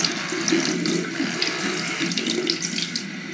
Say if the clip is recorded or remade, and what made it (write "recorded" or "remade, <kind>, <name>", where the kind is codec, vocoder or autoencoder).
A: recorded